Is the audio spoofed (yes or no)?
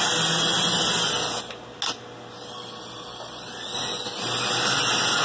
no